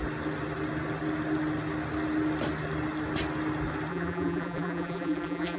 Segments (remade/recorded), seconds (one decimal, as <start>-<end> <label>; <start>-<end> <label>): 0.0-3.9 recorded; 3.9-5.6 remade